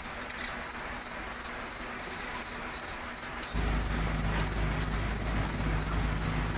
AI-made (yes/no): no